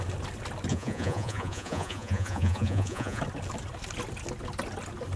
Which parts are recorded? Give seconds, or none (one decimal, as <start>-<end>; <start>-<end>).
0.0-0.7; 3.2-5.2